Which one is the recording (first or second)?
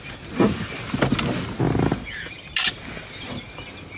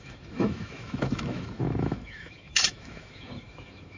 first